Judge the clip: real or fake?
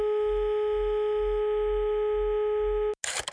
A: real